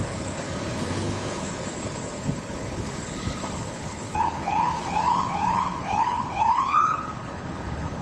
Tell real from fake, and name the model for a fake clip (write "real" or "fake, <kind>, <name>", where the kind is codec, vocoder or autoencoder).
fake, codec, HILCodec